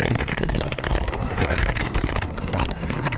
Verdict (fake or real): fake